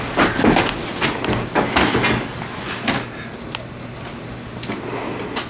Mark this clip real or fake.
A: real